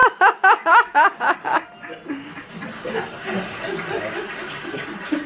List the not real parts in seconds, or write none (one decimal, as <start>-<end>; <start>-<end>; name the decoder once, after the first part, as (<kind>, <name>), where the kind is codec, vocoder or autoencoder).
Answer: 0.0-1.2 (autoencoder, DAC-VAE)